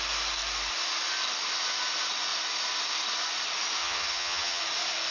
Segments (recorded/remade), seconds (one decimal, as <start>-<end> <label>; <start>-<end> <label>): 0.0-3.8 recorded; 3.8-4.6 remade; 4.6-5.1 recorded

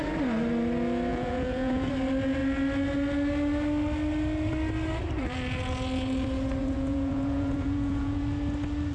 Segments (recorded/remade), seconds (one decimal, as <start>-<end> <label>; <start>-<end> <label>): 0.0-1.1 recorded; 1.1-1.9 remade; 1.9-6.6 recorded; 6.6-8.2 remade; 8.2-8.9 recorded

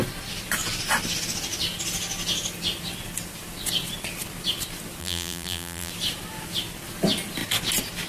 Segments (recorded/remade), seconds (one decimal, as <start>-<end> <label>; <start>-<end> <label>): 0.0-5.0 recorded; 5.0-5.9 remade; 5.9-8.1 recorded

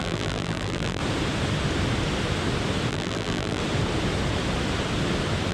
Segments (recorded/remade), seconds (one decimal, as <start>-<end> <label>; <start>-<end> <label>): 0.0-1.0 remade; 1.0-2.9 recorded; 2.9-3.6 remade; 3.6-5.5 recorded

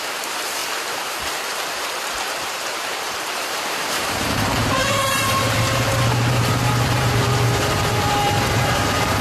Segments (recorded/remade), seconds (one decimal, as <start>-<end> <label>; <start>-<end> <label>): 0.0-9.2 remade

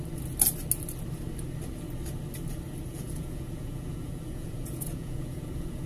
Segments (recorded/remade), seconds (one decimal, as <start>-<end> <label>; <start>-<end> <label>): 0.0-2.9 recorded; 2.9-5.9 remade